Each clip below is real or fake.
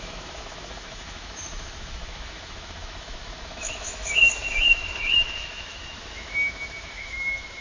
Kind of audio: fake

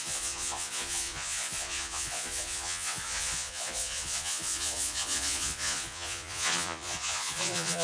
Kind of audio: fake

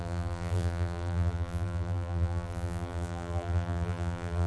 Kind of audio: fake